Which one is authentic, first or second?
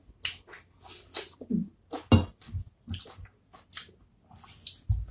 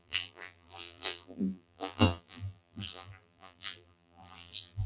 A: first